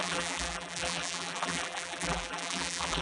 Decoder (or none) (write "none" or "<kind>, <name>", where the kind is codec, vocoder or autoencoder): vocoder, BigVGAN v2